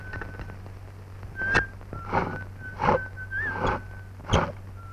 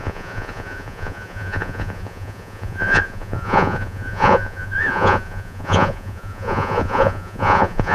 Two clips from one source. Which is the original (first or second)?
first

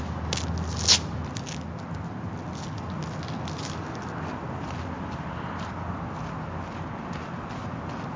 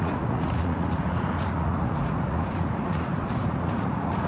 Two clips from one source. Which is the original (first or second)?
first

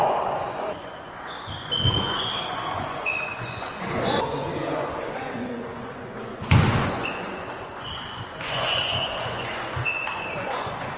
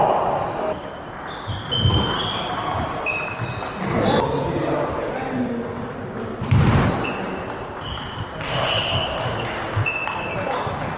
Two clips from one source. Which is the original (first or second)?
second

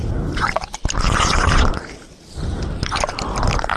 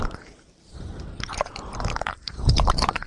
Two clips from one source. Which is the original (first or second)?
first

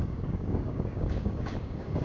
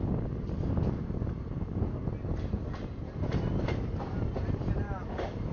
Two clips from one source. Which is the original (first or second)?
second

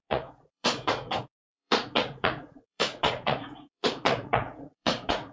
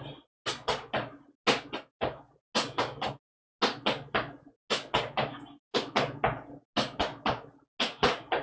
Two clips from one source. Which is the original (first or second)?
second